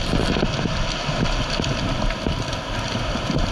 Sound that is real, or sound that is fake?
real